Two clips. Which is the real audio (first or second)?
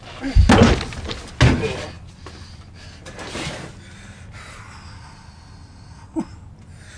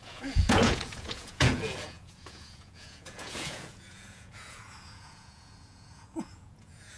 first